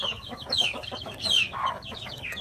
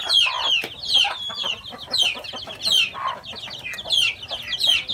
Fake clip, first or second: first